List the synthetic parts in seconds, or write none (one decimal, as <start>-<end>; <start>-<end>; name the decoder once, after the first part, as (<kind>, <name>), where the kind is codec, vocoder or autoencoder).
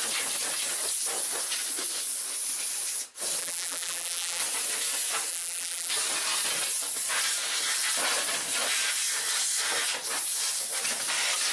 3.4-4.4 (vocoder, BigVGAN v2); 5.3-5.9